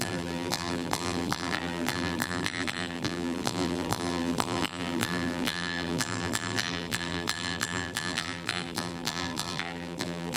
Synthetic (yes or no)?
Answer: yes